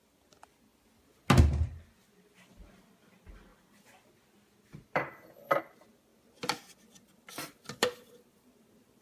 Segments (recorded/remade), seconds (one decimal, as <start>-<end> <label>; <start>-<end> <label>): 0.0-9.0 recorded